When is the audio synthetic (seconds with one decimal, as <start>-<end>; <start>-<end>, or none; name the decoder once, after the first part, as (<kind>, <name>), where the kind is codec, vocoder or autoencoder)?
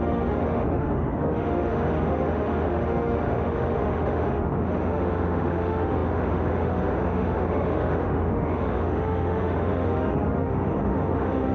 0.0-11.5 (autoencoder, DAC-VAE)